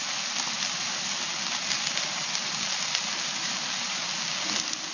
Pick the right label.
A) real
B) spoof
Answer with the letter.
A